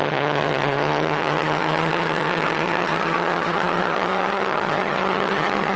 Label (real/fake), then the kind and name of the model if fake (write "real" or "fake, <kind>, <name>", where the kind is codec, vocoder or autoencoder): fake, vocoder, HiFi-GAN